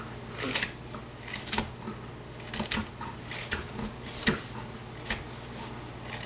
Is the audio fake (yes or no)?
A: no